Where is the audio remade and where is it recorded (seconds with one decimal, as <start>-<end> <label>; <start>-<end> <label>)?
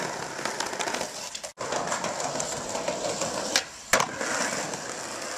0.0-5.4 recorded